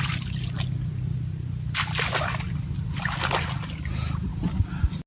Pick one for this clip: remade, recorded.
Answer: recorded